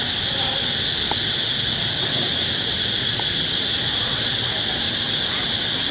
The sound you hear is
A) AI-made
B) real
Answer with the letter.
B